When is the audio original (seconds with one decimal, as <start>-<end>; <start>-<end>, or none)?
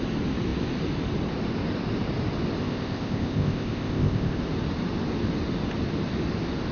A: 0.0-2.6; 4.4-6.7